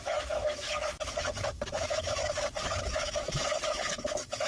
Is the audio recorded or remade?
remade